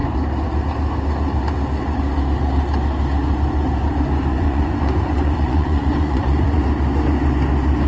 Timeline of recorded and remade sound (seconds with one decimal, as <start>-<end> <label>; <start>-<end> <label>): 0.0-4.3 recorded; 4.3-6.6 remade; 6.6-7.9 recorded